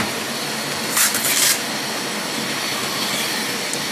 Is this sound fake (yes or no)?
no